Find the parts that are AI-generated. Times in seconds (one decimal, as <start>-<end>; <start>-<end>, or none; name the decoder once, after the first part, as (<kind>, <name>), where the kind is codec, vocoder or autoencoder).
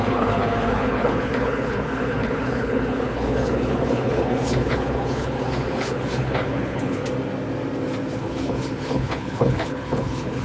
0.0-7.0 (codec, HILCodec); 8.2-10.4